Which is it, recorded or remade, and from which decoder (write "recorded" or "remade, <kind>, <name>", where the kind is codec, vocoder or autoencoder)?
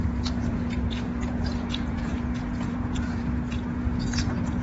remade, vocoder, Vocos